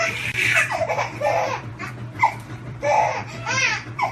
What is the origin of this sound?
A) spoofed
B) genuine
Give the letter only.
A